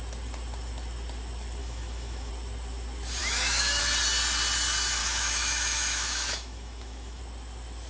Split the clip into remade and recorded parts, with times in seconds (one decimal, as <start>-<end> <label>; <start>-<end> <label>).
0.0-1.6 recorded; 1.6-2.3 remade; 2.3-3.2 recorded; 3.2-3.8 remade; 3.8-5.0 recorded; 5.0-7.2 remade; 7.2-7.9 recorded